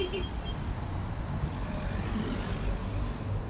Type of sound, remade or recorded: recorded